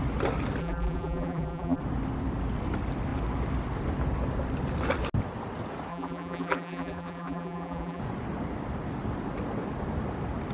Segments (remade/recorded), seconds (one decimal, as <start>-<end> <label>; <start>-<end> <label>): 0.0-0.6 recorded; 0.6-1.8 remade; 1.8-5.9 recorded; 5.9-8.0 remade; 8.0-10.5 recorded